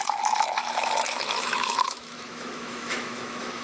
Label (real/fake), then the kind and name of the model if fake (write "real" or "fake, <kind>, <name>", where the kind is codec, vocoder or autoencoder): fake, autoencoder, DAC-VAE